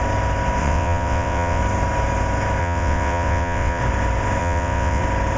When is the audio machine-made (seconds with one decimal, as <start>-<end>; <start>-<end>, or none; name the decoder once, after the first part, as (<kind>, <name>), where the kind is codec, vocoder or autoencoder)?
0.6-1.6 (vocoder, WaveNeXt); 2.6-3.8; 4.4-5.0

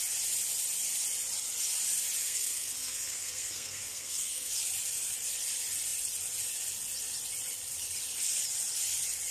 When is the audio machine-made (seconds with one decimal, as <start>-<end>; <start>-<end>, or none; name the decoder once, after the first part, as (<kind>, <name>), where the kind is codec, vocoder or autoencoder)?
2.2-4.5 (codec, SNAC)

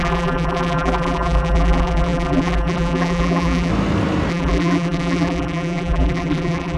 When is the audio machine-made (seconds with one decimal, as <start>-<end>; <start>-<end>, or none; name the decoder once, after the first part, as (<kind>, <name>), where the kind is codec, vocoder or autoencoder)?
0.0-3.7 (vocoder, BigVGAN v2); 4.3-6.8

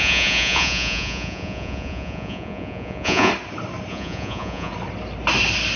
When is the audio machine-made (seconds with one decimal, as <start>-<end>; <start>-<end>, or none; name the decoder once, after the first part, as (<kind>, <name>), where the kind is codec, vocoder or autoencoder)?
0.0-3.3 (vocoder, Vocos); 3.9-4.7

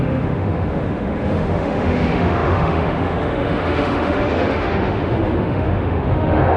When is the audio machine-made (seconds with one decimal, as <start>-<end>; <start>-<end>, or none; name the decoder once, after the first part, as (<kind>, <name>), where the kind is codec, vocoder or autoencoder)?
0.0-6.6 (autoencoder, DAC-VAE)